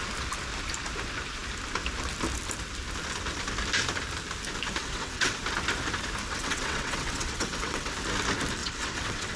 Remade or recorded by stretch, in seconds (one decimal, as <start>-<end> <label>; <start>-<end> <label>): 0.0-4.8 recorded; 4.8-5.4 remade; 5.4-6.2 recorded; 6.2-7.9 remade; 7.9-8.6 recorded; 8.6-9.4 remade